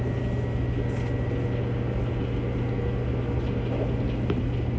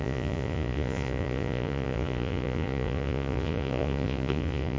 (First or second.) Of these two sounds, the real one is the first